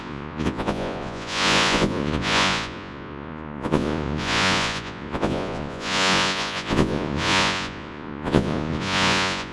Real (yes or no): no